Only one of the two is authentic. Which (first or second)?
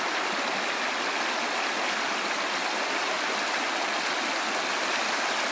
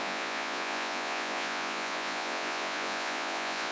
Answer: first